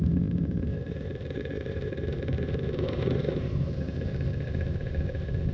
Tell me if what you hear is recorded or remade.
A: remade